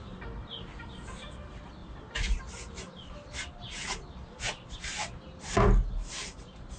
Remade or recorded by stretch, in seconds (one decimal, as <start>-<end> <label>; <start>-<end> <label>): 0.0-6.8 recorded